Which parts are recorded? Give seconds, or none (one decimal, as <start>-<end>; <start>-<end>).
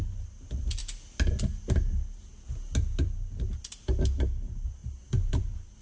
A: 0.0-4.8